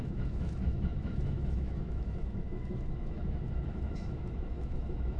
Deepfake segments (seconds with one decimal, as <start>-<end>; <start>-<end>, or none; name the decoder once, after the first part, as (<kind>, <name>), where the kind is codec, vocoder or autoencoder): 0.0-5.2 (autoencoder, DAC-VAE)

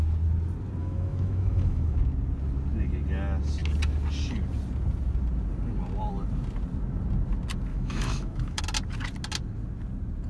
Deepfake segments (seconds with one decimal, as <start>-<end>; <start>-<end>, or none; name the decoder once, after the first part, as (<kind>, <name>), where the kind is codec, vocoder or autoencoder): 0.8-2.0 (autoencoder, DAC-VAE); 7.7-8.6

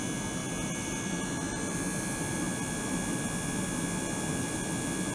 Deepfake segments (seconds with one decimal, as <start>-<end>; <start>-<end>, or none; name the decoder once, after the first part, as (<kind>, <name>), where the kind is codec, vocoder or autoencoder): none